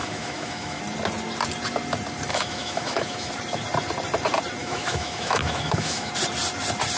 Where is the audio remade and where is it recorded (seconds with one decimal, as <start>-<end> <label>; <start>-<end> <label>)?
0.0-0.8 remade; 0.8-2.3 recorded; 2.3-3.3 remade; 3.3-4.6 recorded; 4.6-6.1 remade; 6.1-7.0 recorded